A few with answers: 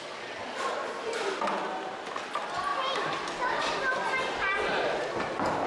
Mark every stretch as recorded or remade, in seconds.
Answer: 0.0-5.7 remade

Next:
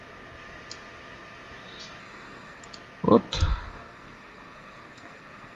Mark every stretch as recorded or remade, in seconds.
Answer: 0.0-2.0 recorded; 2.0-2.6 remade; 2.6-3.5 recorded; 3.5-5.6 remade